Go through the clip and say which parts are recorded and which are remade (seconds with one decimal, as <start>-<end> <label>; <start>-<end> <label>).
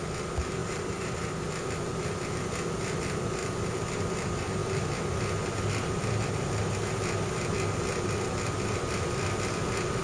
0.0-0.6 recorded; 0.6-1.6 remade; 1.6-10.0 recorded